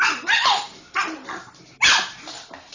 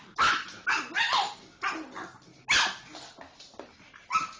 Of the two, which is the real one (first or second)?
second